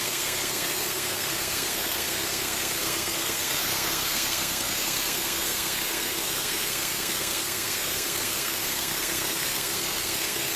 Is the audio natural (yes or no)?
no